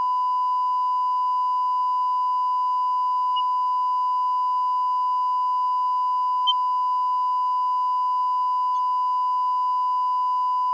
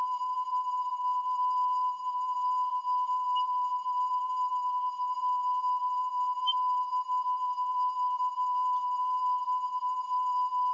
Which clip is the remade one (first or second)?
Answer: second